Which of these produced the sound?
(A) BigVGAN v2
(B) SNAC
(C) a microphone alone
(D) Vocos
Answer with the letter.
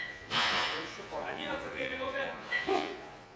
D